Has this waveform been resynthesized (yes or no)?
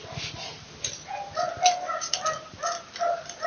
no